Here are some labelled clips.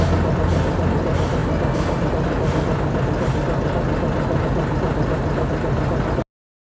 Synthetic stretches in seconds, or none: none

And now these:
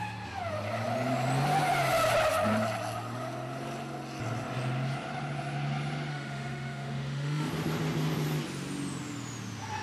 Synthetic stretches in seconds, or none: 6.1-7.5 (autoencoder, DAC-VAE)

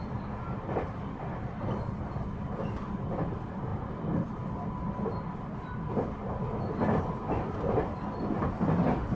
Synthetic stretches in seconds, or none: none

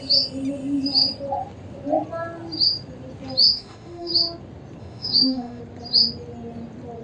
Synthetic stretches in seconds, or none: 3.5-4.1 (autoencoder, DAC-VAE); 4.8-5.6

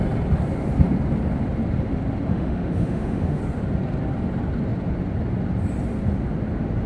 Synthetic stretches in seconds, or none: 2.3-3.4 (autoencoder, DAC-VAE)